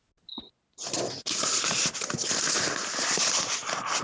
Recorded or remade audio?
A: recorded